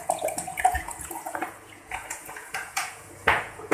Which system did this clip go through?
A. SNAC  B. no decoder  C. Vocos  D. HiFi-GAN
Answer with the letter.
C